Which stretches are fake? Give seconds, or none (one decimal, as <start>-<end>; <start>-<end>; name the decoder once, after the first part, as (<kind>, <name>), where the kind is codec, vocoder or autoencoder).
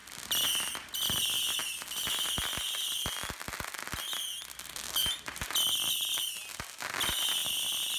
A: 5.0-6.3 (vocoder, BigVGAN v2); 7.4-8.0